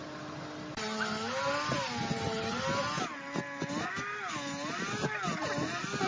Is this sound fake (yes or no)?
no